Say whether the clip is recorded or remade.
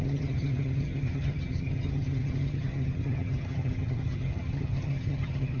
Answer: remade